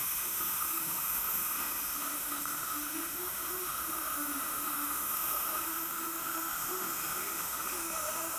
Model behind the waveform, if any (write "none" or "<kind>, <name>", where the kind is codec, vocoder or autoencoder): autoencoder, DAC-VAE